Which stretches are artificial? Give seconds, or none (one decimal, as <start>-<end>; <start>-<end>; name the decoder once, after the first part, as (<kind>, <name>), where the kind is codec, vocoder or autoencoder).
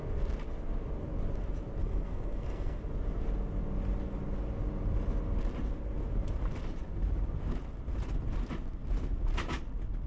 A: 1.8-2.8 (codec, SNAC)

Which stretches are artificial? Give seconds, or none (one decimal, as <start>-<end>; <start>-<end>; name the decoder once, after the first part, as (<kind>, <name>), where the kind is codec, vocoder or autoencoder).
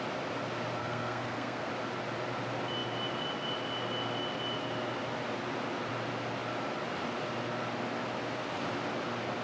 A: 0.8-1.7 (codec, SNAC)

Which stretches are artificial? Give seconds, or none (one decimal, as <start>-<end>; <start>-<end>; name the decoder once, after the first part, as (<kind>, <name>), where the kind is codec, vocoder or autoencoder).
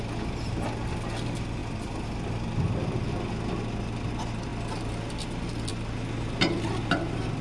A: none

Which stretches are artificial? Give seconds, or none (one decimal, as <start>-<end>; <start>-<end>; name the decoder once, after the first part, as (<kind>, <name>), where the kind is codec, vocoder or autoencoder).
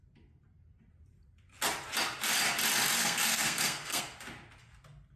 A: 3.0-4.0 (codec, SNAC)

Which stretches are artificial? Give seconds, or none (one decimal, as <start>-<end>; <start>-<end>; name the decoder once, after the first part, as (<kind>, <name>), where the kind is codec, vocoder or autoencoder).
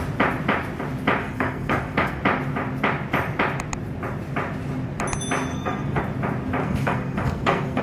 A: 1.2-2.2 (codec, SNAC); 5.5-6.0; 6.6-7.8